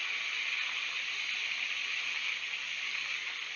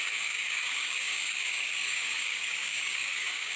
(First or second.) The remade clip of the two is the second